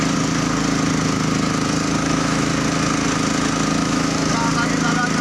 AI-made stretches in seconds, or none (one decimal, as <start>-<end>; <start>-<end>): 2.0-2.5; 3.8-4.3